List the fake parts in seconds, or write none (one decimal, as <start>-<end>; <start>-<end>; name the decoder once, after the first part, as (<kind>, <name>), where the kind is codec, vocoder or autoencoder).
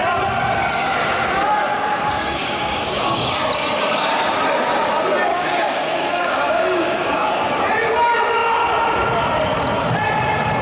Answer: 1.7-3.3 (codec, DAC); 5.3-7.3